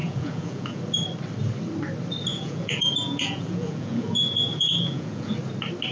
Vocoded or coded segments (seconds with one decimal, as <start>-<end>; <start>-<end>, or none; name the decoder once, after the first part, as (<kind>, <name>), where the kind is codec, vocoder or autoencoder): 0.0-0.8 (vocoder, Vocos); 2.3-5.3